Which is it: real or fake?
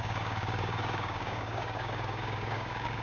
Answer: fake